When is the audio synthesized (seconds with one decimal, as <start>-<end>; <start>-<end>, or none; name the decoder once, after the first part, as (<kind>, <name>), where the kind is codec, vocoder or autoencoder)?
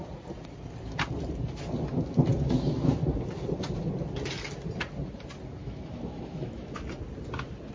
5.6-6.7 (autoencoder, DAC-VAE)